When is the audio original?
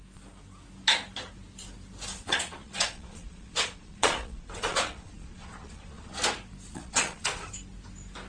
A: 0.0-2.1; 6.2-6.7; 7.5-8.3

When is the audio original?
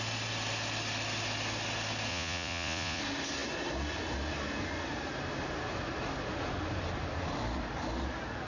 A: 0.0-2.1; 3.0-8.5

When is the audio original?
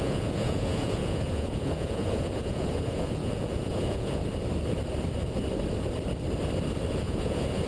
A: 4.2-6.9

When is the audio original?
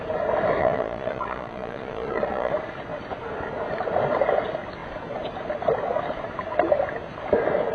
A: 0.0-0.6; 2.5-7.7